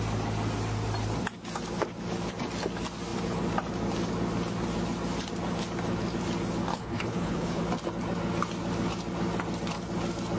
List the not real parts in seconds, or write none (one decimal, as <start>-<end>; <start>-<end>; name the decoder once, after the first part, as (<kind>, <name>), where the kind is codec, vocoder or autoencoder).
6.7-7.6 (codec, HILCodec)